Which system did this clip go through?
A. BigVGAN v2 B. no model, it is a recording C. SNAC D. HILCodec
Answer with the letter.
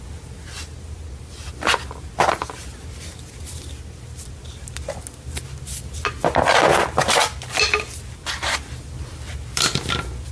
B